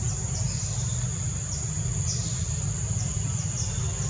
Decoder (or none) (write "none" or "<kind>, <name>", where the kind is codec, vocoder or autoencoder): none